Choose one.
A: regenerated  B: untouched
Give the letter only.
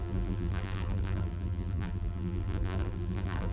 A